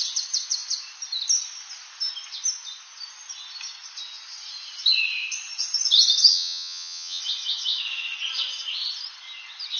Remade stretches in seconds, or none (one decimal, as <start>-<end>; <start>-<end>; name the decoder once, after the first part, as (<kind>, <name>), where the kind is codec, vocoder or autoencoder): 6.3-7.2 (vocoder, WaveNeXt)